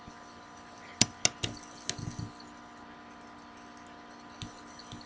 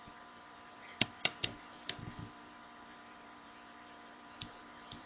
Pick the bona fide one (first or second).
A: first